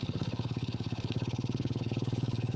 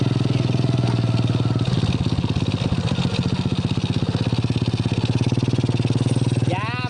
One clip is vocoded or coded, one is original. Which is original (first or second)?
second